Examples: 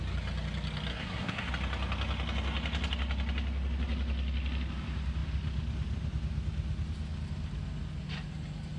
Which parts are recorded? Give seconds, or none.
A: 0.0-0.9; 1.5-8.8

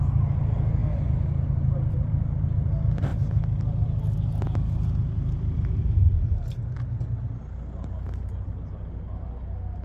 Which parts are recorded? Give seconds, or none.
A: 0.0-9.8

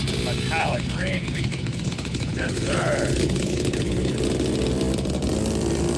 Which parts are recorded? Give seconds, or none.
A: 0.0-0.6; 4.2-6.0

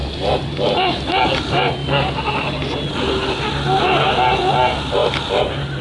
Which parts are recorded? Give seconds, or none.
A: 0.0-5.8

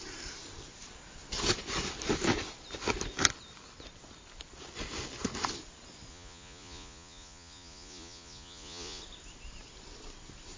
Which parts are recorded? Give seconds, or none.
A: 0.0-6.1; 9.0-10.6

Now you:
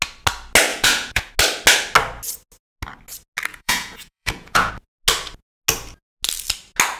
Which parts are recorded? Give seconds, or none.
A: 0.0-0.7; 1.3-3.5; 4.7-7.0

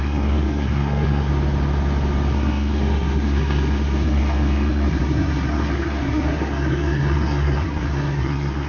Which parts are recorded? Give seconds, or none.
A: 1.3-2.3